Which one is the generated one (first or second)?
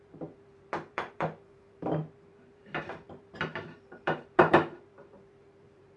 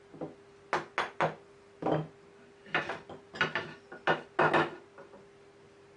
first